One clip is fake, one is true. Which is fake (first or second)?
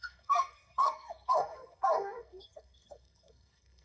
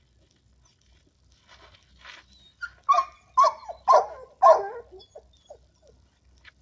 first